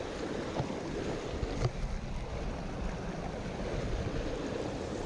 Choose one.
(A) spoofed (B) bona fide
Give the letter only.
B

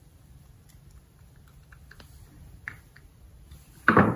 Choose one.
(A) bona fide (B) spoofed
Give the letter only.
B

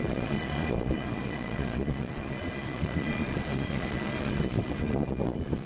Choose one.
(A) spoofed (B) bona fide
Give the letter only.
A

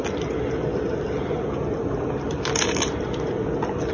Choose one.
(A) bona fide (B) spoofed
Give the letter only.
A